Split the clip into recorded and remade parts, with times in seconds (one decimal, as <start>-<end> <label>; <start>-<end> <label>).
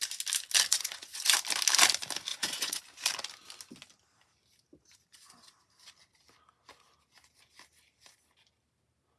0.0-0.7 recorded; 0.7-1.2 remade; 1.2-2.3 recorded; 2.3-2.8 remade; 2.8-9.2 recorded